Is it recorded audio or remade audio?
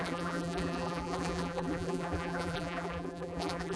remade